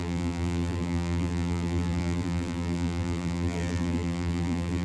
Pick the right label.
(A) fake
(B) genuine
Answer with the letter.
A